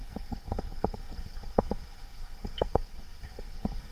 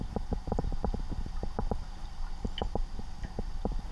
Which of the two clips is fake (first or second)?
first